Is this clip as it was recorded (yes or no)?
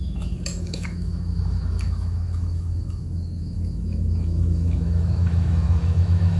no